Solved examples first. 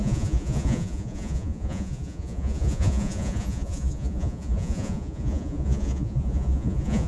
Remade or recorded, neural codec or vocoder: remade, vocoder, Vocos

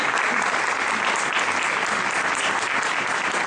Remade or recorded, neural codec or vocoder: recorded